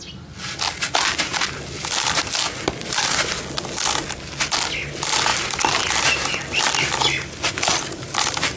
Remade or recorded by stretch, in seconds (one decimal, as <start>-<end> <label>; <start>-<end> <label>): 0.0-8.6 recorded